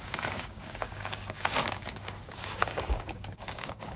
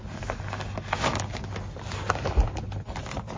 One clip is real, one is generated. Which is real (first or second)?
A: second